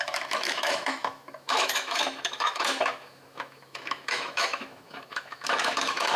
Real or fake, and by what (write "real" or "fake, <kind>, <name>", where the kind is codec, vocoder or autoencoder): fake, autoencoder, DAC-VAE